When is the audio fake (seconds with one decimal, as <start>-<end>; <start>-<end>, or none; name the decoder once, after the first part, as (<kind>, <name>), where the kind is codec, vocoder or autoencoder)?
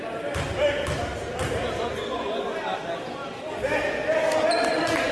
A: none